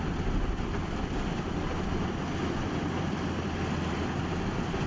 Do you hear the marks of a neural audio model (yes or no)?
no